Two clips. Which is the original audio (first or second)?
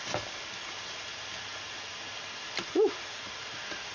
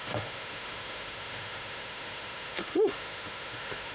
first